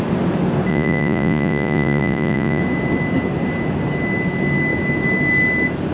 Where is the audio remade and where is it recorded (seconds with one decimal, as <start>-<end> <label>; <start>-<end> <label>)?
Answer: 0.0-0.7 recorded; 0.7-2.6 remade; 2.6-5.9 recorded

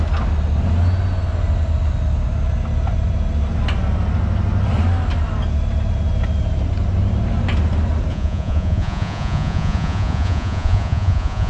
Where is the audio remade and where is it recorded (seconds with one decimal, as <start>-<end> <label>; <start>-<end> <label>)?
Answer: 0.0-8.1 recorded; 8.1-11.5 remade

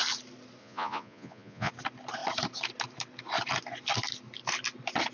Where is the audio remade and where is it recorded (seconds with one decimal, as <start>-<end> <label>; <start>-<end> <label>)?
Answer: 0.0-0.6 recorded; 0.6-1.7 remade; 1.7-5.1 recorded

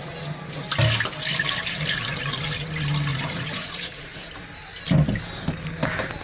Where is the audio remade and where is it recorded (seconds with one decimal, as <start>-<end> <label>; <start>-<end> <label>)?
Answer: 0.0-3.1 recorded; 3.1-4.3 remade; 4.3-6.2 recorded

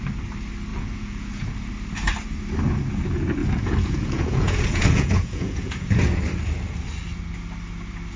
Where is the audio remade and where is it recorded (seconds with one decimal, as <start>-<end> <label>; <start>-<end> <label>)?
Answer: 0.0-0.7 recorded; 0.7-1.5 remade; 1.5-3.4 recorded; 3.4-6.2 remade; 6.2-8.2 recorded

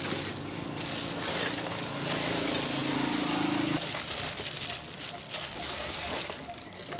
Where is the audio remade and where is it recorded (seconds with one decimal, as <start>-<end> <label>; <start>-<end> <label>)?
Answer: 0.0-7.0 recorded

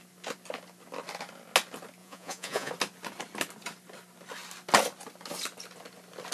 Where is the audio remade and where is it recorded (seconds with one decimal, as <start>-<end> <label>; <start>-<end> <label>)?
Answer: 0.0-2.0 recorded; 2.0-2.7 remade; 2.7-6.3 recorded

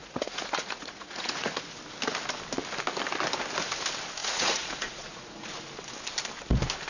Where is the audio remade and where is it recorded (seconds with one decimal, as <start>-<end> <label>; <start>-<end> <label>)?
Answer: 0.0-1.8 remade; 1.8-4.2 recorded; 4.2-5.5 remade; 5.5-6.9 recorded